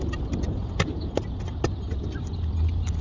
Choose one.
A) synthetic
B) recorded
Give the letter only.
B